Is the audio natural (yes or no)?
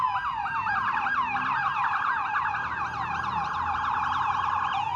yes